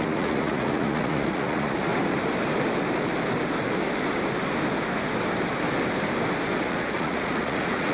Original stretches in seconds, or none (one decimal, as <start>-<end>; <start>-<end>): 1.9-6.6